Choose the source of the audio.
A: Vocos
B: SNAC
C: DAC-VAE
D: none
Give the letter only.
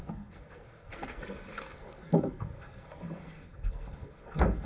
B